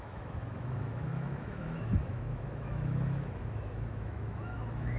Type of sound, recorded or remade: remade